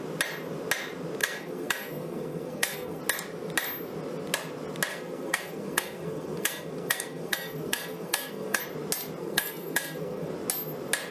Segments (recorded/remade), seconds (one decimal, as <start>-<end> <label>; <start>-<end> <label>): 0.0-1.2 recorded; 1.2-3.0 remade; 3.0-4.9 recorded; 4.9-8.6 remade; 8.6-9.2 recorded; 9.2-10.3 remade; 10.3-11.1 recorded